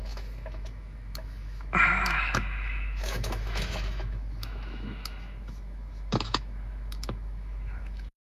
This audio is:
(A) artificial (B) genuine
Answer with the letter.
A